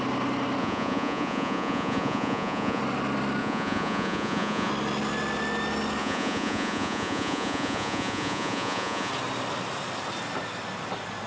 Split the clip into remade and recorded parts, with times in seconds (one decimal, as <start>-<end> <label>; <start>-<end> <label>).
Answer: 0.0-0.6 recorded; 0.6-2.8 remade; 2.8-3.4 recorded; 3.4-4.7 remade; 4.7-6.0 recorded; 6.0-9.1 remade; 9.1-11.3 recorded